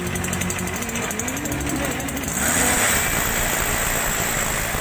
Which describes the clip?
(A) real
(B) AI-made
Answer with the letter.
A